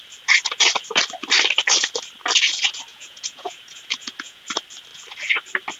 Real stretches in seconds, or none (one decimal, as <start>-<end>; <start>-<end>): 0.0-2.9; 4.4-5.8